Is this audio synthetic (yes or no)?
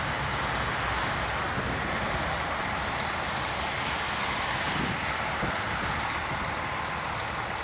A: no